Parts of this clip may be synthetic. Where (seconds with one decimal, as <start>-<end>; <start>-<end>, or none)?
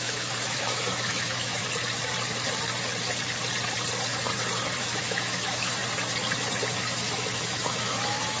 0.0-1.6; 4.8-5.8; 6.8-8.4